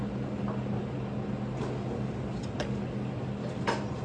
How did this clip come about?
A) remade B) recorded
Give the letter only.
B